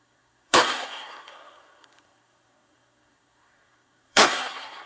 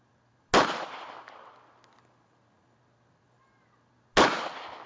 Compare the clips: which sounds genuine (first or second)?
second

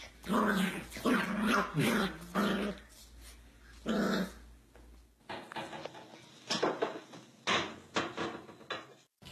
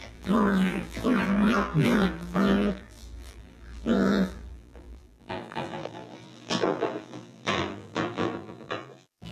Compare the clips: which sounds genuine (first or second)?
first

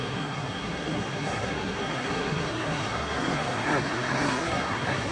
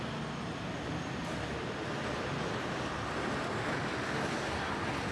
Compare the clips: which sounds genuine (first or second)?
second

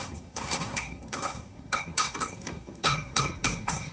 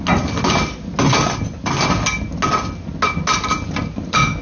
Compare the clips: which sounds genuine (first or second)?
second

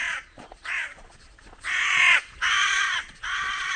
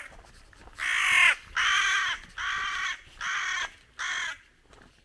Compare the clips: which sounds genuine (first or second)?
second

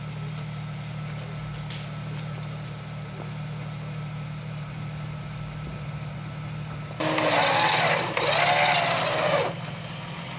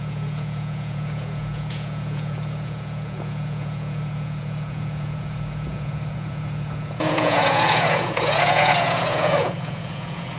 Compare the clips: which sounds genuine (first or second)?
first